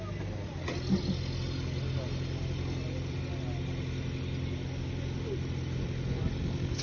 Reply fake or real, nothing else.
real